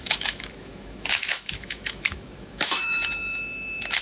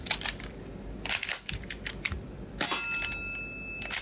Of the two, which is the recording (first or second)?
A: second